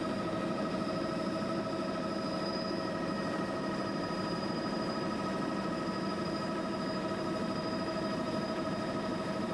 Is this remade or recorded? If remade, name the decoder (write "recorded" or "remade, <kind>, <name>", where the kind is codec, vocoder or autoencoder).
remade, vocoder, BigVGAN v2